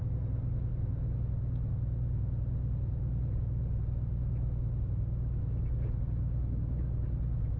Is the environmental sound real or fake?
real